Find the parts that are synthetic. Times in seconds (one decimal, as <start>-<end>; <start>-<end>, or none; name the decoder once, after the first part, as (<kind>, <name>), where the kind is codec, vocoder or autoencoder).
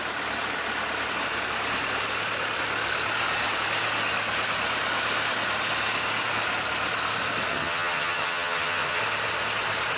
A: 7.5-9.0 (vocoder, HiFi-GAN)